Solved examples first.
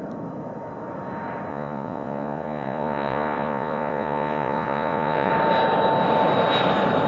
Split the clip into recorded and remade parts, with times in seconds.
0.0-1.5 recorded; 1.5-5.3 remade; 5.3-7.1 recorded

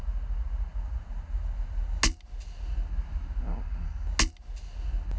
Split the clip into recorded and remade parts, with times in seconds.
0.0-5.2 recorded

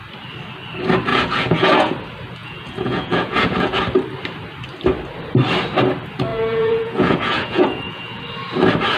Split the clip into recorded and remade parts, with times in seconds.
0.0-1.1 recorded; 1.1-1.9 remade; 1.9-2.4 recorded; 2.4-3.8 remade; 3.8-6.3 recorded; 6.3-8.2 remade; 8.2-9.0 recorded

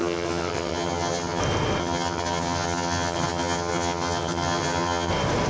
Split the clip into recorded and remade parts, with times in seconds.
0.0-1.4 remade; 1.4-1.8 recorded; 1.8-5.1 remade; 5.1-5.5 recorded

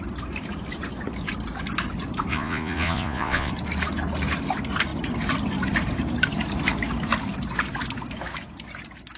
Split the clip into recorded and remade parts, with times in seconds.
0.0-2.3 recorded; 2.3-3.5 remade; 3.5-9.2 recorded